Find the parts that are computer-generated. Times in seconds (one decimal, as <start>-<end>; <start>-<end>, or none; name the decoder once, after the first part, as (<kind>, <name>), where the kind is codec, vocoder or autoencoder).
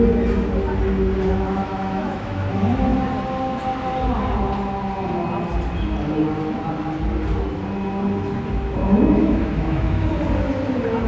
1.3-2.5 (autoencoder, DAC-VAE); 8.8-10.1